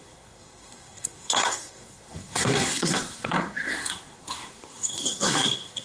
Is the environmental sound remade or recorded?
remade